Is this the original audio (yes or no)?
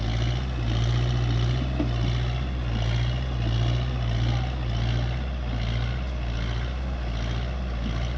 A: yes